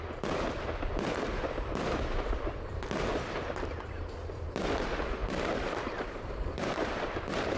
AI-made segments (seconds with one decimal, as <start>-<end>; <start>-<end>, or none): 5.2-7.6